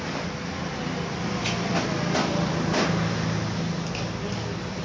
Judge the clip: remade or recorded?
recorded